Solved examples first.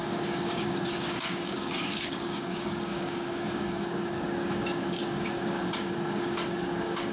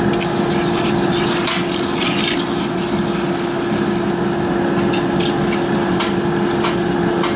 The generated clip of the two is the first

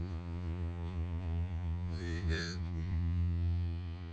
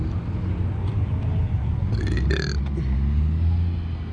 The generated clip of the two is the first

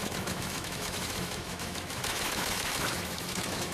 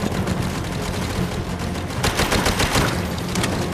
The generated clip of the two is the first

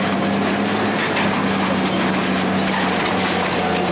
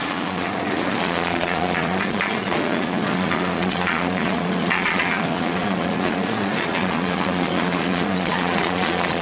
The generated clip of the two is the second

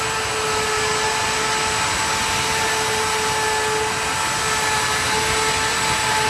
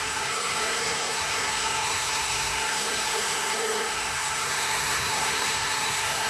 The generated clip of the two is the second